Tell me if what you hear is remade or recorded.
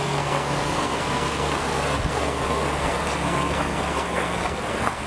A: remade